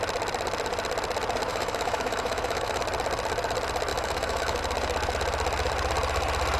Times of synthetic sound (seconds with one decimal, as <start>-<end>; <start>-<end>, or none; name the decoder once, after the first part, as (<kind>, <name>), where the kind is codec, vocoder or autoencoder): 1.5-2.8 (autoencoder, DAC-VAE); 3.9-4.6